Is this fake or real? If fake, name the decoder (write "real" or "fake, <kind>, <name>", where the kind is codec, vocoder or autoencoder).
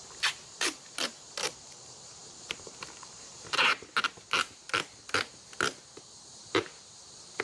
fake, vocoder, BigVGAN v2